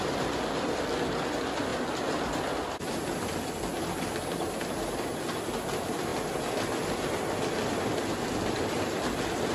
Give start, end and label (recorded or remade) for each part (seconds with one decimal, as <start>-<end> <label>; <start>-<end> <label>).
0.0-9.5 recorded